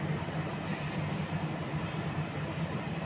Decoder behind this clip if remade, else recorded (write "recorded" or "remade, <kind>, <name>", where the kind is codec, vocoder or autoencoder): recorded